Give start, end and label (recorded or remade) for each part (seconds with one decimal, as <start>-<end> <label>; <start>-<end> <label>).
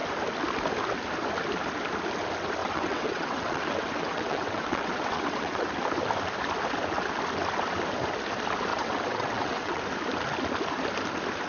0.0-2.6 recorded; 2.6-5.7 remade; 5.7-8.7 recorded; 8.7-9.8 remade; 9.8-11.5 recorded